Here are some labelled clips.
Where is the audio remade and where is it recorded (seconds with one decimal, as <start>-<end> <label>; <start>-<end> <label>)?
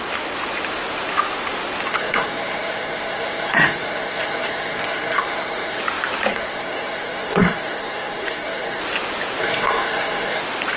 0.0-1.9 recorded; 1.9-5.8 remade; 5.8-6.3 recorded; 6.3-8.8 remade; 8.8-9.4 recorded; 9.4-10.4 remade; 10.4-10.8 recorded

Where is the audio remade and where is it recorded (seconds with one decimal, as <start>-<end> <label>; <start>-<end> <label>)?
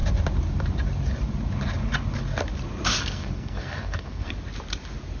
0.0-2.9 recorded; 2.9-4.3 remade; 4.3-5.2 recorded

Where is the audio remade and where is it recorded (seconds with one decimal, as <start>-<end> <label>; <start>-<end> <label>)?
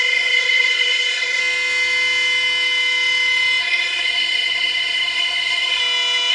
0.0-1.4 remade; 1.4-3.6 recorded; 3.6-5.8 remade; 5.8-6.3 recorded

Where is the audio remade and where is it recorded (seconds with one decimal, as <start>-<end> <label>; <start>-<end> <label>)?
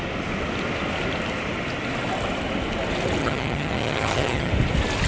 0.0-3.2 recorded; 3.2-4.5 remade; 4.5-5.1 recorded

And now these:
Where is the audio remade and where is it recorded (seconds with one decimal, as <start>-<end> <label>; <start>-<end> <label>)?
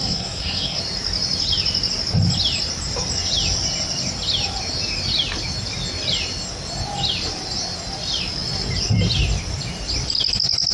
0.0-0.8 remade; 0.8-10.7 recorded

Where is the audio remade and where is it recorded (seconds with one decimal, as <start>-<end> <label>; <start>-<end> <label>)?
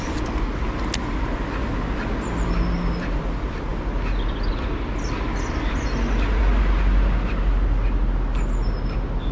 0.0-9.3 recorded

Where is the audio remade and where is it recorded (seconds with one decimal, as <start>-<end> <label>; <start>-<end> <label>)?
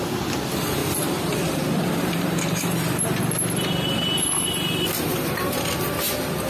0.0-0.8 recorded; 0.8-3.2 remade; 3.2-5.1 recorded; 5.1-5.8 remade; 5.8-6.5 recorded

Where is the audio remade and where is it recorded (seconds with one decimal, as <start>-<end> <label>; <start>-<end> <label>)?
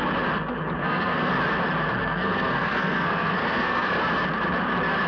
0.0-0.8 recorded; 0.8-1.3 remade; 1.3-2.0 recorded; 2.0-3.9 remade; 3.9-5.1 recorded